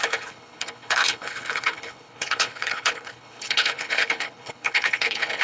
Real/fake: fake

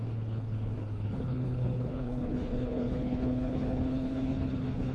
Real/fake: fake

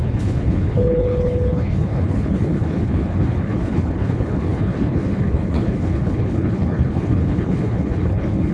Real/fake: fake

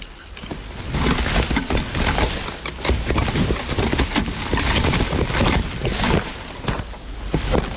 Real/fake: real